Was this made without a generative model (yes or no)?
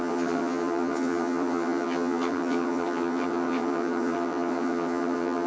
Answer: no